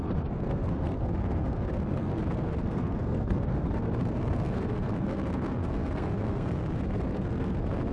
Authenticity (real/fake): fake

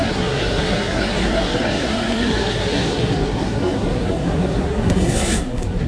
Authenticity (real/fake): fake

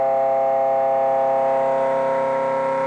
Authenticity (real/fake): real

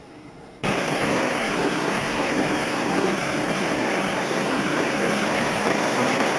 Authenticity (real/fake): fake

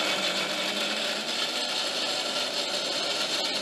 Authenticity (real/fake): real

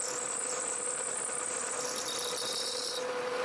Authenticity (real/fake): real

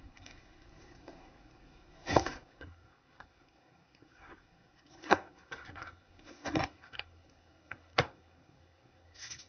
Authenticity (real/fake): fake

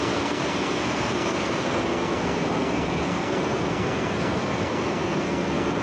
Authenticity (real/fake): fake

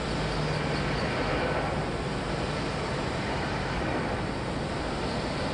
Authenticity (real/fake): real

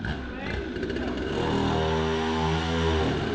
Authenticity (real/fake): real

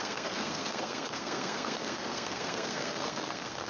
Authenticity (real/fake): fake